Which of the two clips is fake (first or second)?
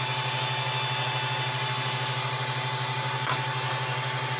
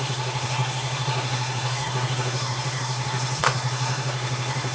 second